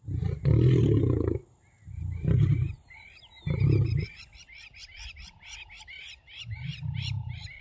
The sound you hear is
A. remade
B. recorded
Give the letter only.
B